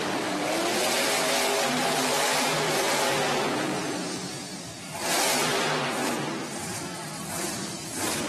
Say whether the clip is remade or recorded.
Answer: remade